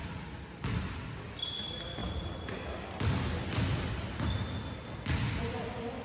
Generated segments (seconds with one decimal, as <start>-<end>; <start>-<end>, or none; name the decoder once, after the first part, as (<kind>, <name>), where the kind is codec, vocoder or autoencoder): none